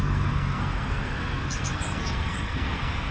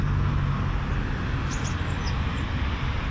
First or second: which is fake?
first